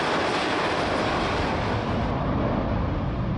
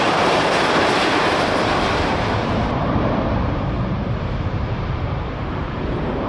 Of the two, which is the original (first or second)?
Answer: first